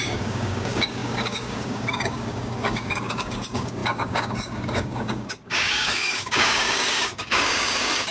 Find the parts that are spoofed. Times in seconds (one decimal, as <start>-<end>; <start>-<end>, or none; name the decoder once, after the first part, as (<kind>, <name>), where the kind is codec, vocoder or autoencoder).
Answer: 0.0-8.1 (codec, DAC)